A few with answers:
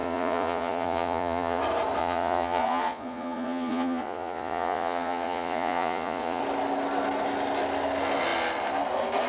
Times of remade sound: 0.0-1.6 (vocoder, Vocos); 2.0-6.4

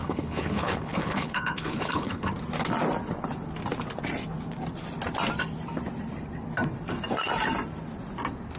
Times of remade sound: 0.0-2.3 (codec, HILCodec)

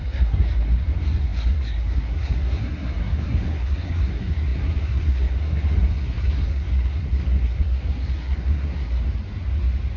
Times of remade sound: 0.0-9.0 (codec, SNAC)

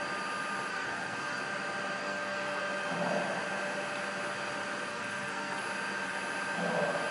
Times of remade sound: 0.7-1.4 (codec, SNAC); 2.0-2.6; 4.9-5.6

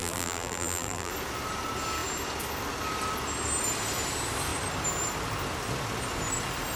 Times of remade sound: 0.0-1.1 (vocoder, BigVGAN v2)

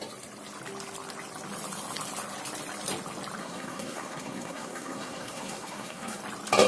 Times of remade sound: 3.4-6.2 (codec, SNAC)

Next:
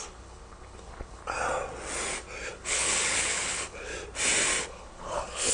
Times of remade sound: 0.0-1.2 (codec, HILCodec); 2.5-3.9; 4.6-5.5